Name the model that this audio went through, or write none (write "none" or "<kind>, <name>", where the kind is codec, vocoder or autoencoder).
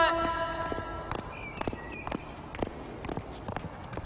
none